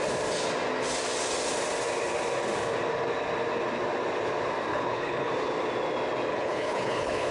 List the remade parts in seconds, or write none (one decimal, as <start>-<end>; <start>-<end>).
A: 4.7-5.3; 6.3-7.3